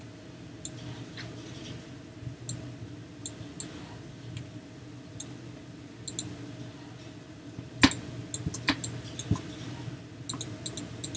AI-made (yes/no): no